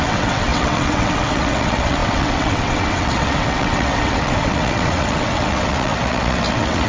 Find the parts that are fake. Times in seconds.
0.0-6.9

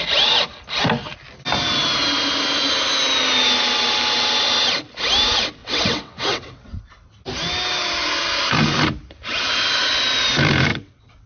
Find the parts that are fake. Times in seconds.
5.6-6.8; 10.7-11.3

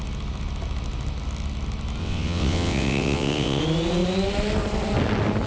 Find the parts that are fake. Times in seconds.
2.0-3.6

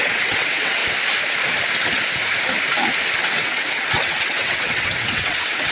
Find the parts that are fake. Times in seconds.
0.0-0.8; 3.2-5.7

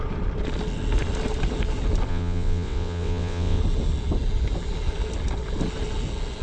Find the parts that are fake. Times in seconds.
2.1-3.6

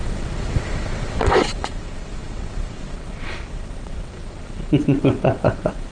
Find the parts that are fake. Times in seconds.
0.0-5.9

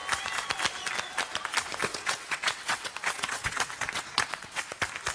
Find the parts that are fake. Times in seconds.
1.9-4.6

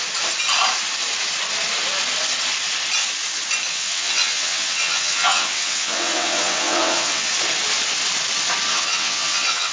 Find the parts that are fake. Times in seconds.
3.7-7.3; 8.7-9.7